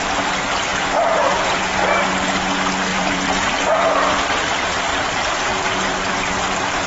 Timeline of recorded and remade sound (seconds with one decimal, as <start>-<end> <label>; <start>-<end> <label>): 0.0-0.7 recorded; 0.7-2.0 remade; 2.0-2.9 recorded; 2.9-3.5 remade; 3.5-4.9 recorded; 4.9-6.9 remade